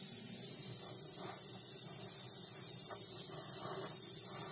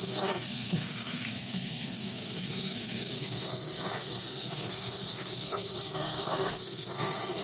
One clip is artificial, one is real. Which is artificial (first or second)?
second